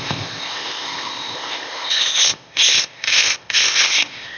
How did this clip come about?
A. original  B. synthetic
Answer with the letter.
B